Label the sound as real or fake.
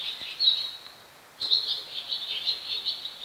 real